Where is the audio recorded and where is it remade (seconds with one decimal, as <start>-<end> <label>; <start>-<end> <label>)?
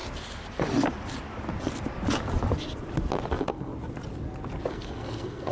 0.0-3.3 recorded; 3.3-3.7 remade; 3.7-4.7 recorded; 4.7-5.5 remade